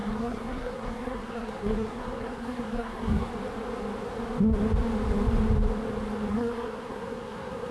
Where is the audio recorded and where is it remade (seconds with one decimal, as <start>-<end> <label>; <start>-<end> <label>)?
0.0-3.3 remade; 3.3-6.3 recorded; 6.3-7.7 remade